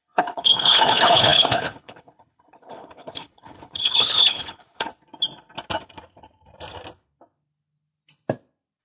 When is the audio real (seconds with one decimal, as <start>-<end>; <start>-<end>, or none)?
4.9-8.8